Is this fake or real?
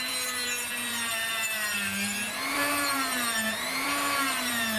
fake